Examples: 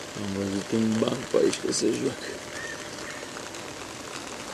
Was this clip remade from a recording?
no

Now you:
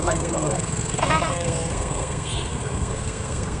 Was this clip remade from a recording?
yes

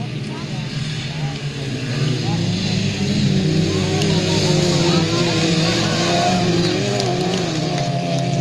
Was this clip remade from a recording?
no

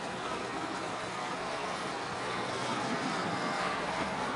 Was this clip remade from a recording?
yes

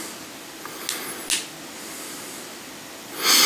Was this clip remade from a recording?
no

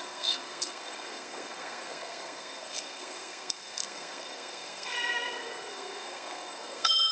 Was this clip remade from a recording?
yes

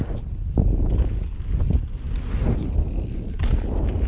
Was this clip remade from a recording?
no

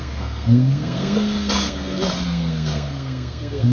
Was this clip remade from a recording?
yes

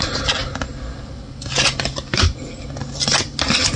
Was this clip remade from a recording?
no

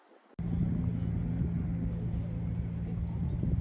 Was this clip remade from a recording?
no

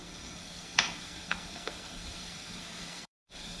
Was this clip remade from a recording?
yes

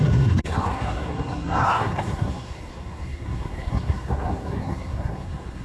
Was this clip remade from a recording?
yes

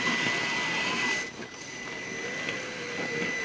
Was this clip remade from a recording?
no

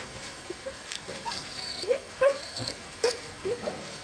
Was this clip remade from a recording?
yes